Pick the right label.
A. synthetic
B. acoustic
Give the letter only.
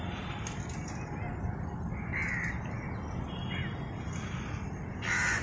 B